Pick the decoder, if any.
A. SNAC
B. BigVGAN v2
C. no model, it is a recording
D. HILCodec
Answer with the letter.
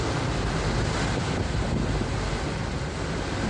C